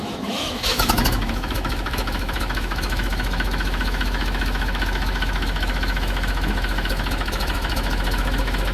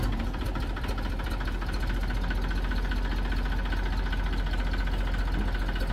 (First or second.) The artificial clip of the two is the first